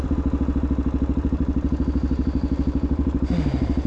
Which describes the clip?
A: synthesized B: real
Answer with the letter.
B